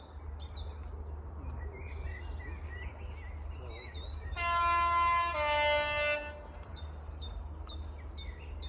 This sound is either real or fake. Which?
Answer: real